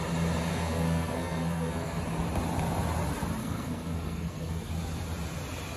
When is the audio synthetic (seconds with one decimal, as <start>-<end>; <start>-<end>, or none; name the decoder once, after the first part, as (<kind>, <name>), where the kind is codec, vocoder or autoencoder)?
0.5-2.0 (codec, SNAC); 3.4-4.7